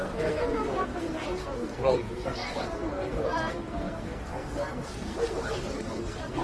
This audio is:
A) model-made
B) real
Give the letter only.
A